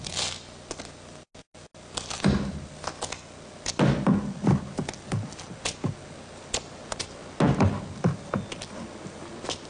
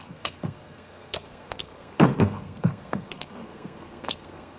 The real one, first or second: first